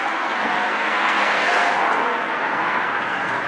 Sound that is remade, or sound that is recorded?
remade